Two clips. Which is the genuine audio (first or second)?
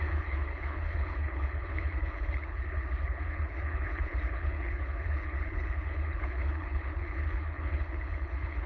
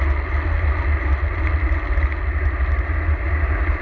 second